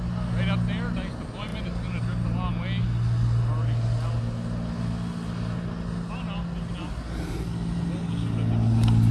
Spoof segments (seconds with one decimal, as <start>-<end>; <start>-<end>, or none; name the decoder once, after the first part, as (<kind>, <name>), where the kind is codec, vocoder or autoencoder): none